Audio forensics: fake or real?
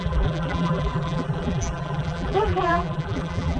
fake